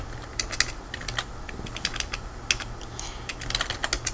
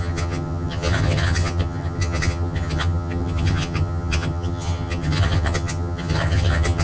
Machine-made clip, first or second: second